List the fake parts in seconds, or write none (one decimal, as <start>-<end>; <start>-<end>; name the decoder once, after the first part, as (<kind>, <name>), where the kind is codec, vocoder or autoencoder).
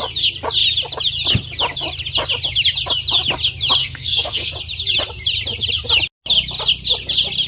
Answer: 3.8-4.5 (codec, SNAC)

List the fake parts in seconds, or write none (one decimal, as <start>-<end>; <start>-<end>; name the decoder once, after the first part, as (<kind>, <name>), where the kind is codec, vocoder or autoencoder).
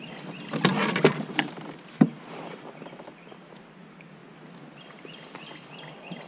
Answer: 0.0-4.2 (vocoder, BigVGAN v2); 4.8-6.3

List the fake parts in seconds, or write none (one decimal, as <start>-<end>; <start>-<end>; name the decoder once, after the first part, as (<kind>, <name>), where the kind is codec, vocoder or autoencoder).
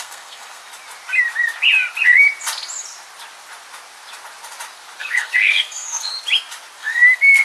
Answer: 0.0-0.6 (codec, SNAC); 5.0-6.1; 6.8-7.4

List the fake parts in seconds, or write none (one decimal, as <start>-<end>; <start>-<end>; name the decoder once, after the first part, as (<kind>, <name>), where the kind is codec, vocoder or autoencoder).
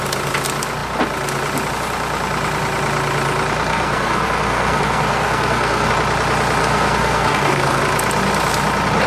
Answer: 3.7-5.9 (codec, SNAC); 6.6-7.8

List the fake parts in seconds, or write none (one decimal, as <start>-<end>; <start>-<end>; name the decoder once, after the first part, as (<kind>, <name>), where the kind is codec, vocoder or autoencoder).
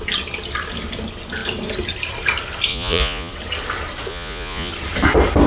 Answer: 2.7-3.3 (vocoder, Vocos); 4.1-4.7